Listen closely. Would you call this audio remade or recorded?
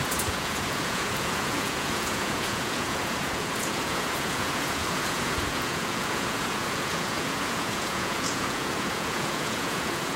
remade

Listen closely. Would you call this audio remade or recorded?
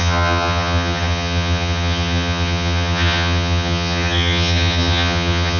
remade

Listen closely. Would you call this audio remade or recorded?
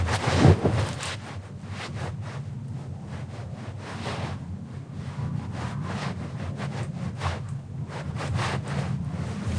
recorded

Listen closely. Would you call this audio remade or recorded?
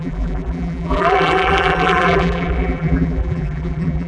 remade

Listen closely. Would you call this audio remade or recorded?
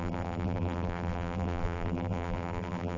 remade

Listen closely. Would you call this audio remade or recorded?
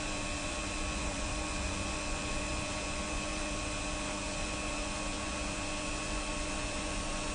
remade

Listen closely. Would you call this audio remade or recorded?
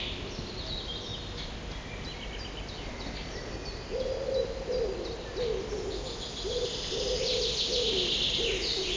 recorded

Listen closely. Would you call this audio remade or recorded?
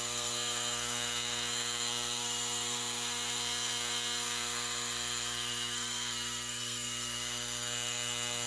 remade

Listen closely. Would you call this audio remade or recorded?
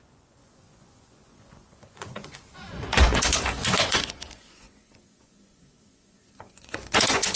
remade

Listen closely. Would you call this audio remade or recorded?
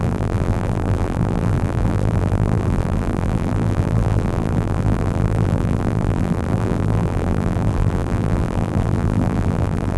remade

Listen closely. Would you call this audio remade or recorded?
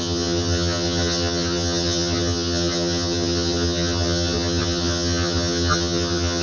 remade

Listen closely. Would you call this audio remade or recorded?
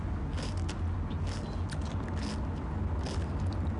recorded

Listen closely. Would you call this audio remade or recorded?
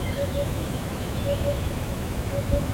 remade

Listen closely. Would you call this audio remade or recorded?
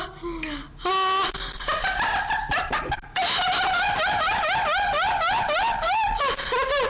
recorded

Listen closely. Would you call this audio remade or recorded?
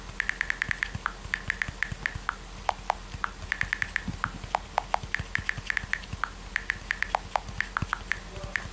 recorded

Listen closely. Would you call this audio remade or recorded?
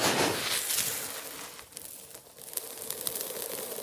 recorded